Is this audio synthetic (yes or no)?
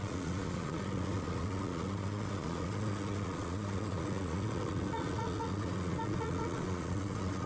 yes